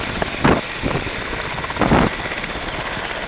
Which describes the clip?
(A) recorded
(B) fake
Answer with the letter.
A